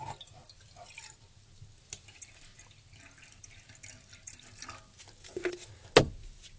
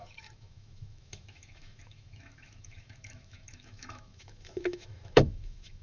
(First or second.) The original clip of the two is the first